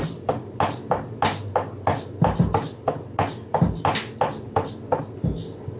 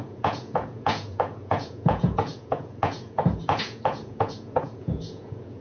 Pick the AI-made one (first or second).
second